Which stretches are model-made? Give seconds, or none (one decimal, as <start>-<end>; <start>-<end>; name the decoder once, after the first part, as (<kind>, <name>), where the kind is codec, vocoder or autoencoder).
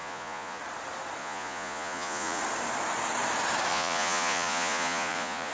0.0-0.6 (vocoder, Vocos); 1.2-2.4; 3.7-5.5